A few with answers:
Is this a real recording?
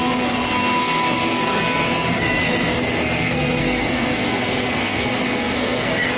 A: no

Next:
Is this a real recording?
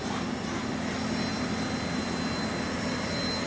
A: yes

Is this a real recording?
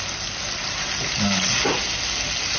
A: yes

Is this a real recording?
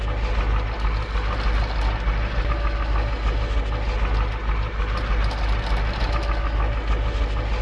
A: yes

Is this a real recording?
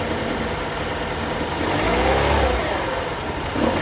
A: yes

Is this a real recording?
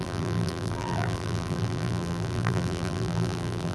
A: no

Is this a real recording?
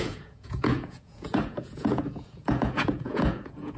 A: no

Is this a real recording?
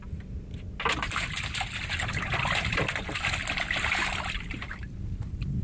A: yes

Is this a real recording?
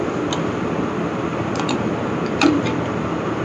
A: no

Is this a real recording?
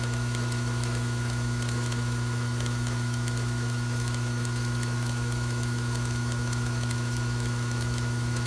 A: no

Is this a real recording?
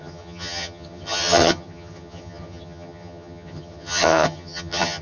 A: no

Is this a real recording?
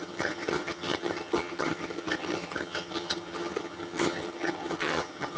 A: no